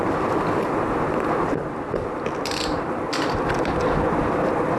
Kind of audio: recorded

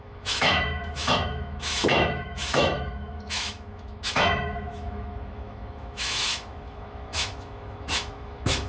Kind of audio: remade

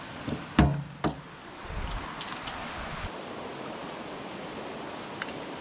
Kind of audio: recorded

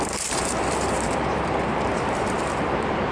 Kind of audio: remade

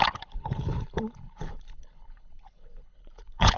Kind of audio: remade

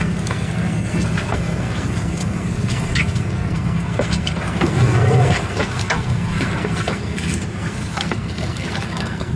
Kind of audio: remade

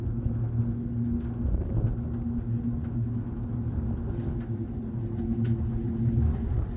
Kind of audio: recorded